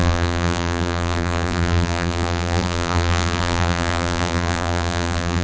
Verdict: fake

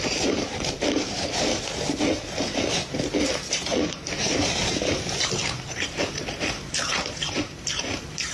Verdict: fake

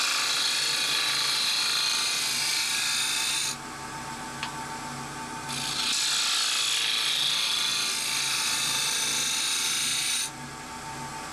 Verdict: real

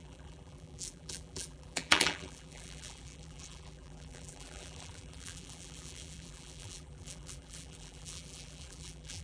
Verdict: fake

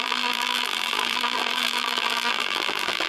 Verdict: fake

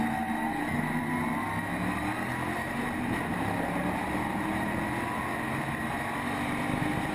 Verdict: real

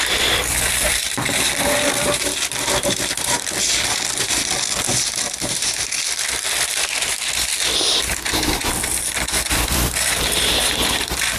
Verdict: fake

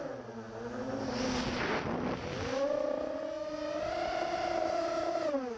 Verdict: real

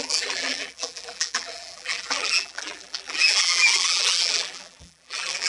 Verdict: fake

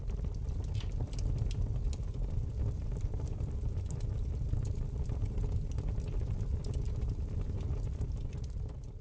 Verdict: real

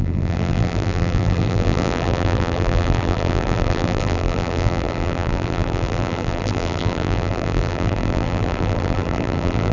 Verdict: fake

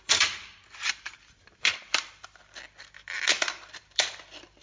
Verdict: fake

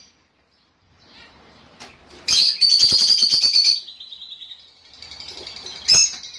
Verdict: fake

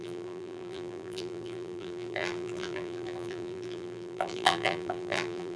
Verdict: fake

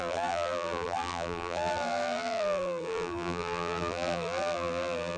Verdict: fake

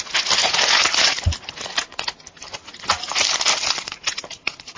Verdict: real